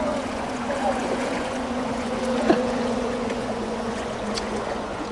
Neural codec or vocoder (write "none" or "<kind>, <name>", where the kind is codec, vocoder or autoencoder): vocoder, Vocos